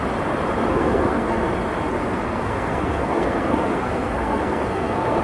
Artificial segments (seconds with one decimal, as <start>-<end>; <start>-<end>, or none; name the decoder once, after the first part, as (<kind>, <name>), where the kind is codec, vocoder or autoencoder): 0.7-1.5 (codec, SNAC); 2.0-5.2